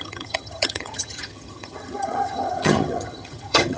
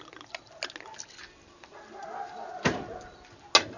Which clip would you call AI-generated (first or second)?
first